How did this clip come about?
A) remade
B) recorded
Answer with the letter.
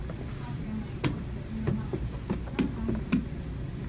B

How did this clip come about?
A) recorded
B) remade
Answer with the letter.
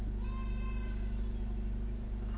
A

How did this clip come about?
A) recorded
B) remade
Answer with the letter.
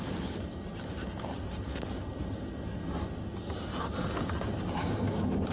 A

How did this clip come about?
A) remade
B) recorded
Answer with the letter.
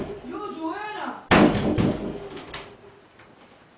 B